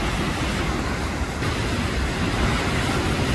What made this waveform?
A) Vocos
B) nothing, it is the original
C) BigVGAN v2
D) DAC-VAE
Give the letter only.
B